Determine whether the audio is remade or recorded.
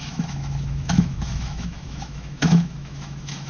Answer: remade